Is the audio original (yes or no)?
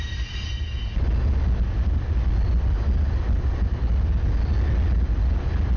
yes